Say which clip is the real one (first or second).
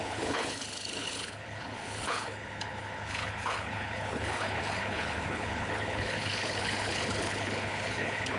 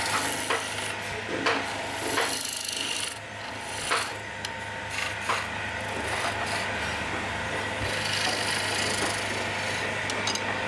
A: second